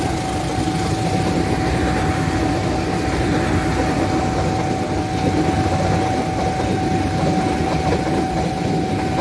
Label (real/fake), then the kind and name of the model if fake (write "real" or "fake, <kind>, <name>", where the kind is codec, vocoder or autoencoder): real